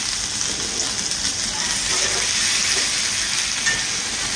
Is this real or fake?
real